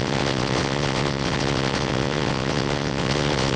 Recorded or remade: remade